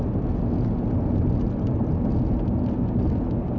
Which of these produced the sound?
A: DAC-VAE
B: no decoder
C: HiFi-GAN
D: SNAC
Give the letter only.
B